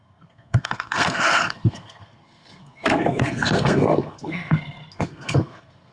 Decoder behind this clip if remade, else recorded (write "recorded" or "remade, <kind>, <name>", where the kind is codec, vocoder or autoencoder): remade, codec, SNAC